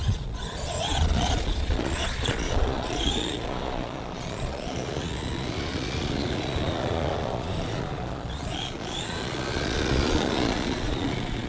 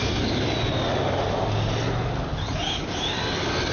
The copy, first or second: first